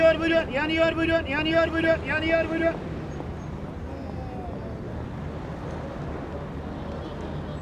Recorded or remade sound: recorded